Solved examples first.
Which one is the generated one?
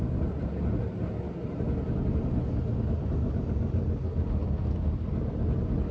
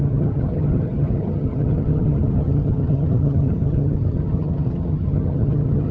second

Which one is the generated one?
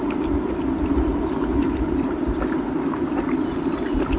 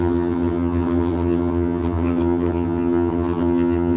second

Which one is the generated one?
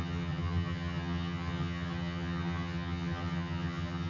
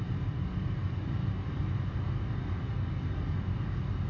first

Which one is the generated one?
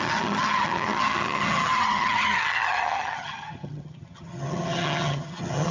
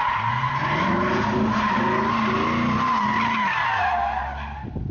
first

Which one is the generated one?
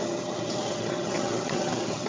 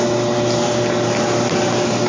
first